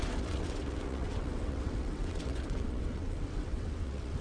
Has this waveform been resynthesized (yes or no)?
yes